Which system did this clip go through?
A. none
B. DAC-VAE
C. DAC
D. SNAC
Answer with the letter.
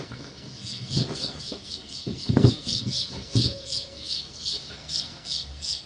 D